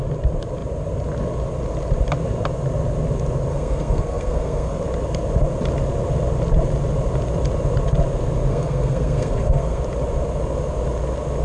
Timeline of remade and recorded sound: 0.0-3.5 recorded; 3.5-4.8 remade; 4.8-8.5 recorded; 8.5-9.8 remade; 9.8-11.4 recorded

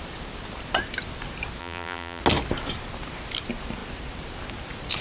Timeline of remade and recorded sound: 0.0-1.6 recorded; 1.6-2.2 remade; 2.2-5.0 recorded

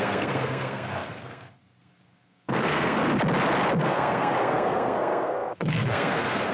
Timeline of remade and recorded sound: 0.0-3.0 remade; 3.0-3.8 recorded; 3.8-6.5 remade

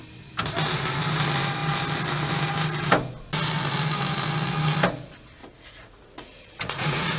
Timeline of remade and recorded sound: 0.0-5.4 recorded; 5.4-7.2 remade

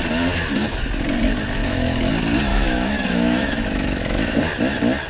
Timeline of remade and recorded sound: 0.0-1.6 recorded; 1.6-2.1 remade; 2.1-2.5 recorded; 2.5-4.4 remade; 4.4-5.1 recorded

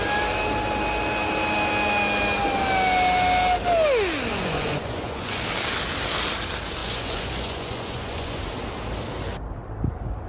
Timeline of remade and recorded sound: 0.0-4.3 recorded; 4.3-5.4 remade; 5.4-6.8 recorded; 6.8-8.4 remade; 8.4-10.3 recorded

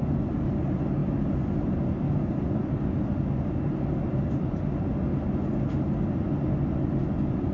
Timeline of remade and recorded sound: 0.0-7.5 recorded